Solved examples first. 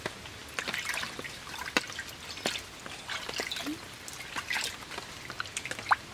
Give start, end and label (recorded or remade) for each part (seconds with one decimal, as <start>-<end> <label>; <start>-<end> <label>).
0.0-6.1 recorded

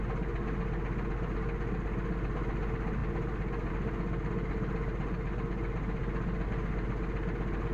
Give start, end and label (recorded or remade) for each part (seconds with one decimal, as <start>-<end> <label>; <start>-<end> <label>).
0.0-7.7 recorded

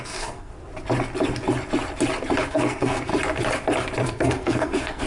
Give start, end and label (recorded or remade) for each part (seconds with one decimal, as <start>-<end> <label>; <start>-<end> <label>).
0.0-0.5 remade; 0.5-2.5 recorded; 2.5-3.1 remade; 3.1-4.0 recorded; 4.0-5.1 remade